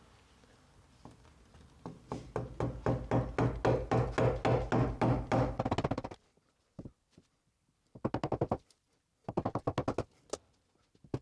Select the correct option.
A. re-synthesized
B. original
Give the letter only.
B